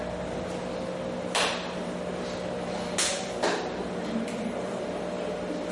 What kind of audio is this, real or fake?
real